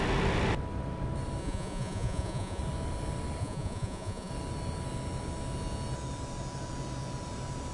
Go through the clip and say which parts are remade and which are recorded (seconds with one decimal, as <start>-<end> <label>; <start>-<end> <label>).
0.0-1.4 recorded; 1.4-2.6 remade; 2.6-3.4 recorded; 3.4-4.3 remade; 4.3-7.7 recorded